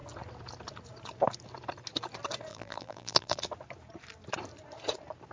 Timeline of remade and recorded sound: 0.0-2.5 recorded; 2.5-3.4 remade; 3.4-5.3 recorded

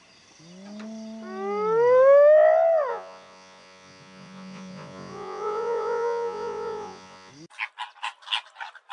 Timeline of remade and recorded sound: 0.0-2.9 recorded; 2.9-7.3 remade; 7.3-8.9 recorded

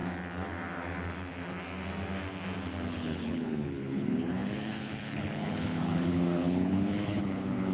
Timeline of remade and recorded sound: 0.0-2.9 recorded; 2.9-7.7 remade